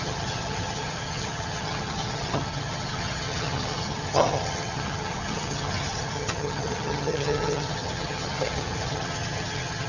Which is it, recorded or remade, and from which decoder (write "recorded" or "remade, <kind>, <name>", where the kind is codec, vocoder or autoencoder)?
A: remade, vocoder, HiFi-GAN